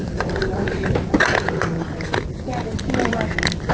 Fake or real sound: real